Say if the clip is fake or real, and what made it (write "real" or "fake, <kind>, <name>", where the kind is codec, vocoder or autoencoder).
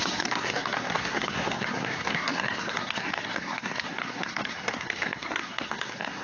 fake, codec, SNAC